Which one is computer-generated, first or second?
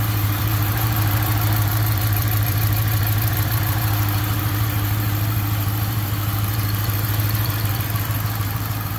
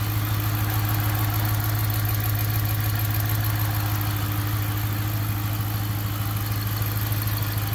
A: first